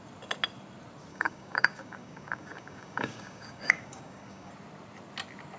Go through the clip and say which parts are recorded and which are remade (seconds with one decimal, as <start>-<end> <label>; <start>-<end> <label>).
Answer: 0.0-1.1 recorded; 1.1-4.5 remade; 4.5-5.6 recorded